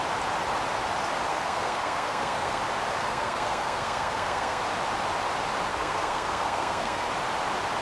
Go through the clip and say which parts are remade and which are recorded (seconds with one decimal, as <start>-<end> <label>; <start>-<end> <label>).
0.0-1.3 recorded; 1.3-2.6 remade; 2.6-3.0 recorded; 3.0-4.6 remade; 4.6-5.7 recorded; 5.7-7.1 remade; 7.1-7.8 recorded